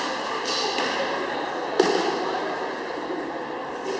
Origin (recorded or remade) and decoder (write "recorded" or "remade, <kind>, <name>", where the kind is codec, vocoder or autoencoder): recorded